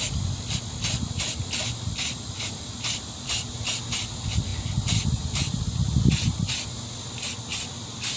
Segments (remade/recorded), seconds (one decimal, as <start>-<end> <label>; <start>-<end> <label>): 0.0-8.2 recorded